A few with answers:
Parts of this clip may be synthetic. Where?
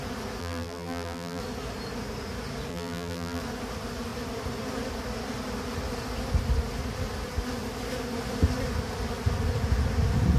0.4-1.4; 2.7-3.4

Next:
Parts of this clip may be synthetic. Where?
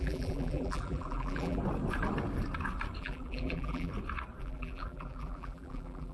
0.0-1.6; 3.0-3.9; 4.4-6.1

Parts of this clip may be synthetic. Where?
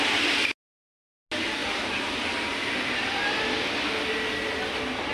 none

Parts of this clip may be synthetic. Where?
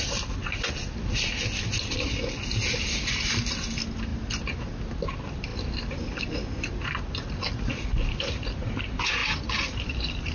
9.2-10.3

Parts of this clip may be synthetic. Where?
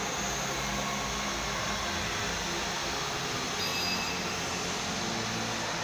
none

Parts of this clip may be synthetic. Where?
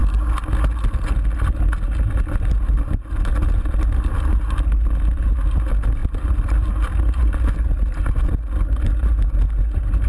6.0-6.7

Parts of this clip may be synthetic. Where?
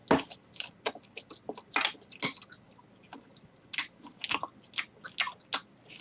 none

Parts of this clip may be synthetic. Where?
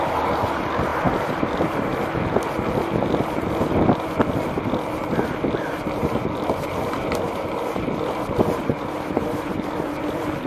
8.7-10.0